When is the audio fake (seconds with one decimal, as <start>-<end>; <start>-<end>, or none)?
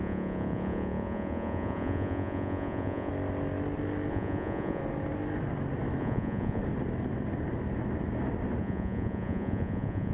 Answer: 0.0-3.1; 4.1-4.8; 6.0-6.6; 8.6-10.1